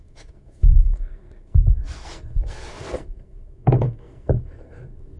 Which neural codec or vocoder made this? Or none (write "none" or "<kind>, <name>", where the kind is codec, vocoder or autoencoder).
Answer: codec, SNAC